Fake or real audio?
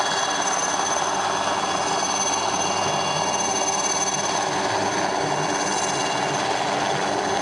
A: real